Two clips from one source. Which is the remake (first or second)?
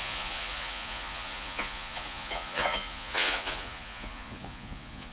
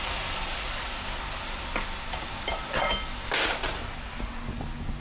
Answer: first